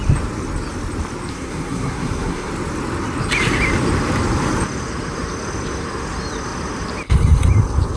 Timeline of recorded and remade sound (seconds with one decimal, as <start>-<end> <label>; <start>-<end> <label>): 0.0-1.3 recorded; 1.3-2.5 remade; 2.5-8.0 recorded